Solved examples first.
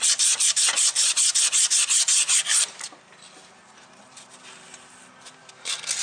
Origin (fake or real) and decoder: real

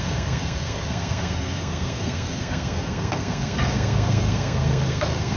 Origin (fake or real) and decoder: fake, codec, SNAC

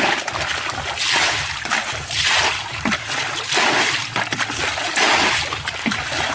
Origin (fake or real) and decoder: real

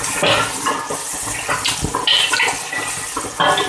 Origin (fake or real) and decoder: real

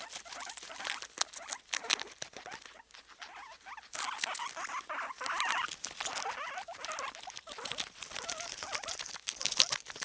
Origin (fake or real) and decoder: real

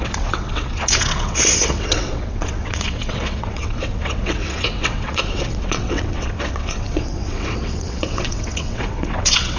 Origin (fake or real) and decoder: fake, vocoder, WaveNeXt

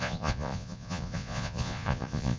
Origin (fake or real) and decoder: fake, vocoder, Vocos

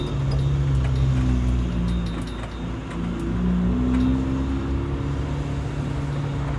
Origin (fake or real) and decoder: real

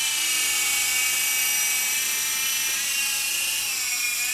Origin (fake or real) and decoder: real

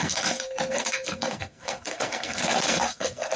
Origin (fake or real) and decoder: fake, codec, SNAC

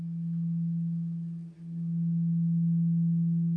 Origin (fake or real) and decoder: real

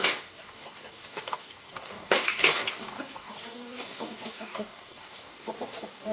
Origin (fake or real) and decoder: fake, codec, DAC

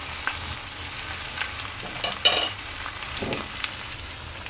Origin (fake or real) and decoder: real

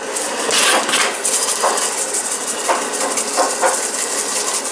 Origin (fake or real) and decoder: real